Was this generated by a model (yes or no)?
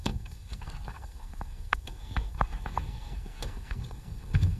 yes